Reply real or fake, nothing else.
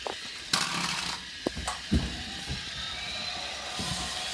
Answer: real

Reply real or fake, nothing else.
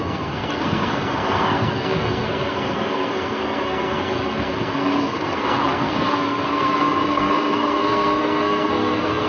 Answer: fake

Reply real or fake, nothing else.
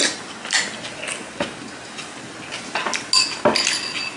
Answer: real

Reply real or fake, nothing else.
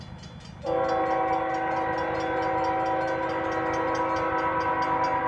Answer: real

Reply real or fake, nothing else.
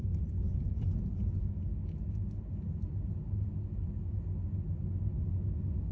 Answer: real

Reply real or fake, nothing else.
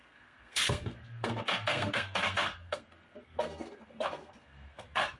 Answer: fake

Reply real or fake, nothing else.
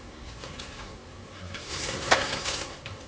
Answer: fake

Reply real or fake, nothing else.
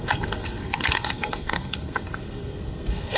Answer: fake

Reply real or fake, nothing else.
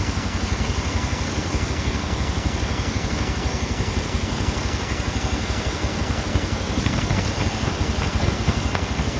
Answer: fake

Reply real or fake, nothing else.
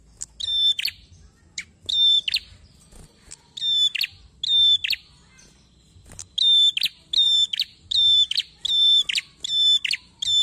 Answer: real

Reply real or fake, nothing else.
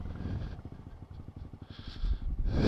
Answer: real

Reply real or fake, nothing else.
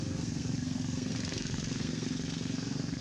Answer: fake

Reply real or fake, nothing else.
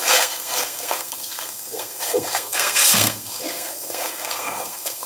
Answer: fake